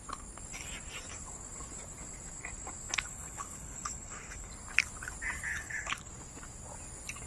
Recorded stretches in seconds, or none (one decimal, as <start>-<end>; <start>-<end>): 0.0-3.1; 4.5-5.5; 6.1-7.3